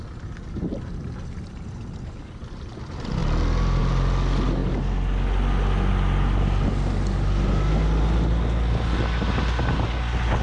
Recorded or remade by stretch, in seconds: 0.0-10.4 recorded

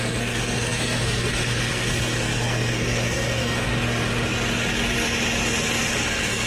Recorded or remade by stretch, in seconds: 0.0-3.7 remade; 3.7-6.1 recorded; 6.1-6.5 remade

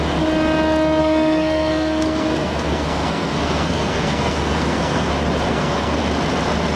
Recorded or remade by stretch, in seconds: 0.0-1.0 recorded; 1.0-5.1 remade; 5.1-5.5 recorded; 5.5-6.0 remade; 6.0-6.8 recorded

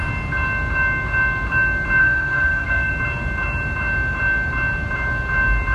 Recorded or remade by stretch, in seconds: 0.0-2.0 recorded; 2.0-2.9 remade; 2.9-5.7 recorded

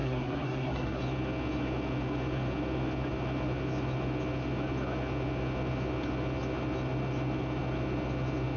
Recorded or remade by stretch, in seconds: 0.0-1.0 remade; 1.0-8.6 recorded